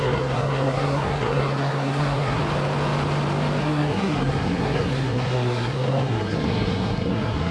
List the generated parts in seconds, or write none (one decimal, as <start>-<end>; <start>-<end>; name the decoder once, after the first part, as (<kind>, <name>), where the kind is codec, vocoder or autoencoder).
0.0-2.4 (codec, SNAC); 3.6-7.5